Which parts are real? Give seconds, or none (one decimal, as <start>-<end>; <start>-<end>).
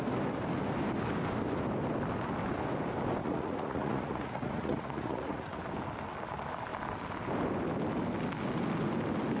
0.0-3.2; 5.6-9.4